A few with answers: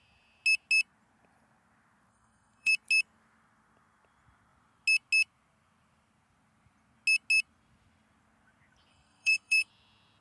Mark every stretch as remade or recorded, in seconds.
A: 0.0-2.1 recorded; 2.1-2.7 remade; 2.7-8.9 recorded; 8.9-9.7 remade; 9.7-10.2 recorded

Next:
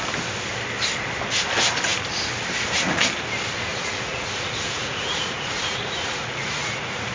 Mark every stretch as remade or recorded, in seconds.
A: 0.0-3.7 recorded; 3.7-7.1 remade

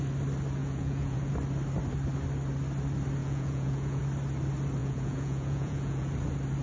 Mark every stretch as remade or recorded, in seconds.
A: 0.0-0.6 recorded; 0.6-1.3 remade; 1.3-3.2 recorded; 3.2-4.0 remade; 4.0-4.8 recorded; 4.8-6.1 remade; 6.1-6.6 recorded

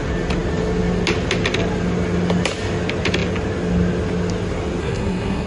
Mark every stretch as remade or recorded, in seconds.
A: 0.0-4.8 recorded; 4.8-5.5 remade

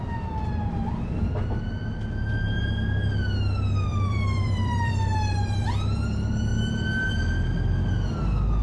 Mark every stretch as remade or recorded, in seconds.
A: 0.0-3.9 recorded; 3.9-5.7 remade; 5.7-8.6 recorded

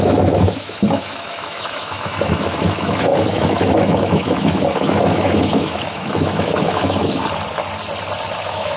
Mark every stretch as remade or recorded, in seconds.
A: 0.0-7.2 remade; 7.2-8.4 recorded; 8.4-8.8 remade

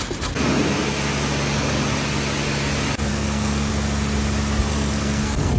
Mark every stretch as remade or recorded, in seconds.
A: 0.0-3.1 recorded; 3.1-3.7 remade; 3.7-4.7 recorded; 4.7-5.6 remade

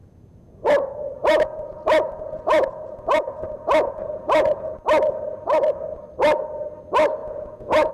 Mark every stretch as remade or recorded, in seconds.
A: 0.0-4.7 remade; 4.7-7.2 recorded; 7.2-7.9 remade